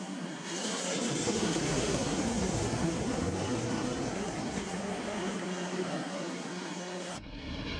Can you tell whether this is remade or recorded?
remade